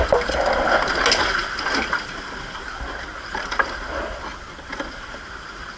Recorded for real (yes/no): yes